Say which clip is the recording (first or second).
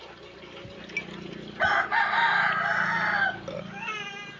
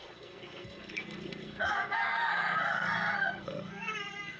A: first